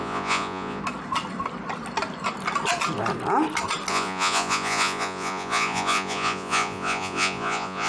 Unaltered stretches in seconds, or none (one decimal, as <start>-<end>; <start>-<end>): 0.8-3.9